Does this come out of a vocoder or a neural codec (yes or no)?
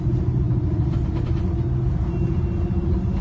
no